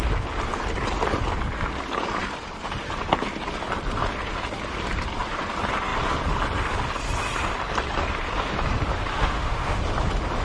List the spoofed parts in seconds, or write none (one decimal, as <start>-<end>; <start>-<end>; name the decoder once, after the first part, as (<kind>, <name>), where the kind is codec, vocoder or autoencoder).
9.1-9.8 (autoencoder, DAC-VAE)